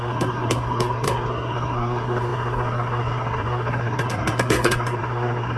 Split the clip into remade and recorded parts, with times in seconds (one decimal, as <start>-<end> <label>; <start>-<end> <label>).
0.0-5.6 remade